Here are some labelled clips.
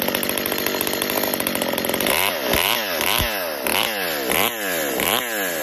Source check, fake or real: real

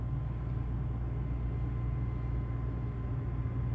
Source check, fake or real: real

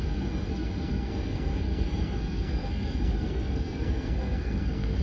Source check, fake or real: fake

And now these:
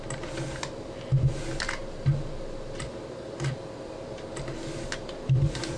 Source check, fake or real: real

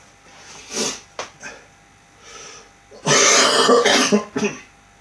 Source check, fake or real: real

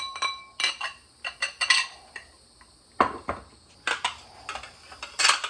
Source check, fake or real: real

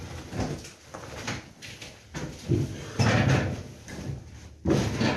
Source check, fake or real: real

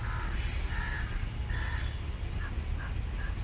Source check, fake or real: real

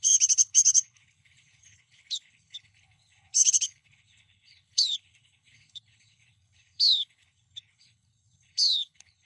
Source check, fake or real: fake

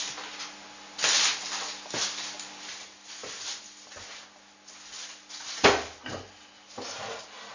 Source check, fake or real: real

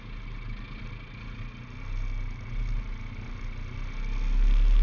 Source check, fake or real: real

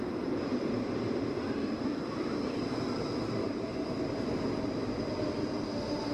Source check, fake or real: fake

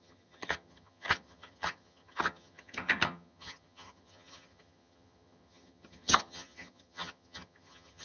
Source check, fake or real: fake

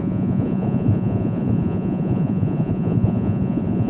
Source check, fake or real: fake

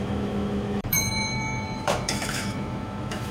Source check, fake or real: fake